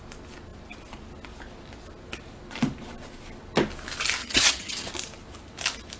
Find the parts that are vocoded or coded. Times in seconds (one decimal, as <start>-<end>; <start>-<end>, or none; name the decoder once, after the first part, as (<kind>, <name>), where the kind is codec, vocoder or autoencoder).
4.2-4.9 (vocoder, HiFi-GAN)